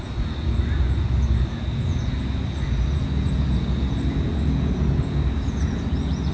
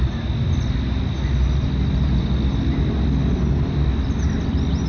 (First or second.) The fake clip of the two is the first